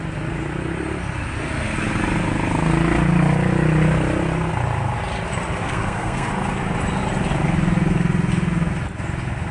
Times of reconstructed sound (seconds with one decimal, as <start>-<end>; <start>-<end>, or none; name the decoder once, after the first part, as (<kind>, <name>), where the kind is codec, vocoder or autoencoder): 5.6-6.3 (codec, SNAC)